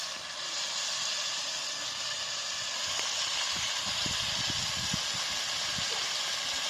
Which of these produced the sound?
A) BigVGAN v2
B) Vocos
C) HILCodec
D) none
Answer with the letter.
D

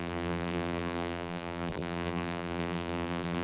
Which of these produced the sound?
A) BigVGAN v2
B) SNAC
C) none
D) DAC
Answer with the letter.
A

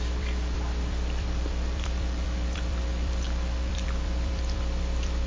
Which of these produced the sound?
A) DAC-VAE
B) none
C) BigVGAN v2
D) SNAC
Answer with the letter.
C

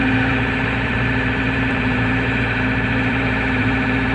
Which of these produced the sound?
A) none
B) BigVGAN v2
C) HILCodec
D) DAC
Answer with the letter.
B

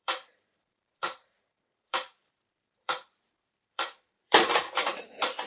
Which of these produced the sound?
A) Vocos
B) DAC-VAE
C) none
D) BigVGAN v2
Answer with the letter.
D